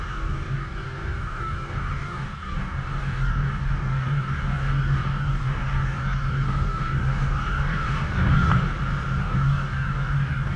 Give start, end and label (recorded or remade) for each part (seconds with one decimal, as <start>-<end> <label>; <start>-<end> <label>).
0.0-8.5 remade; 8.5-9.2 recorded; 9.2-10.6 remade